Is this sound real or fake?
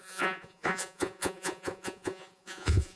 fake